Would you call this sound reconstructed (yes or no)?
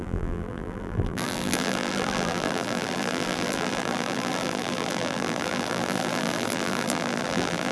yes